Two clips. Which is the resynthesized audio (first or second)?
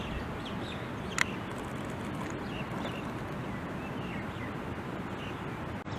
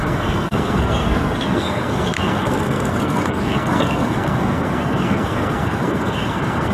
second